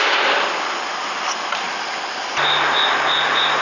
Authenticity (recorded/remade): recorded